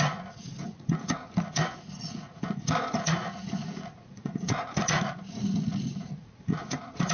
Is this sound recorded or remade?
remade